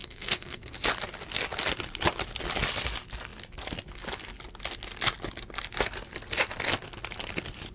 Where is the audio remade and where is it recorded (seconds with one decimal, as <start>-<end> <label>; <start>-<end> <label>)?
0.0-0.8 remade; 0.8-7.7 recorded